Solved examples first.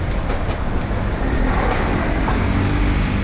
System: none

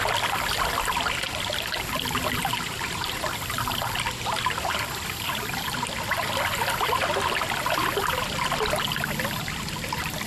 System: none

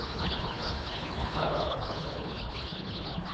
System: codec, HILCodec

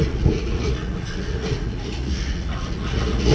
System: vocoder, Vocos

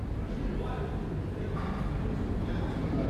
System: none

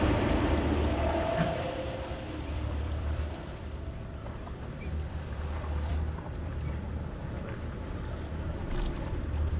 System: vocoder, BigVGAN v2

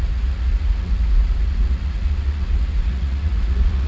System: vocoder, Vocos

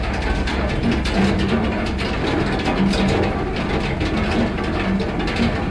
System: none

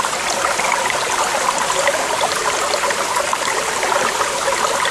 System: none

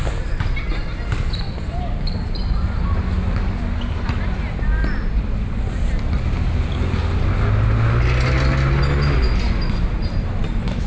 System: none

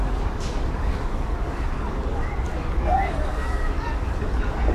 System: codec, DAC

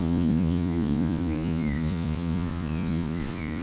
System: vocoder, Vocos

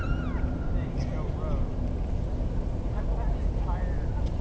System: none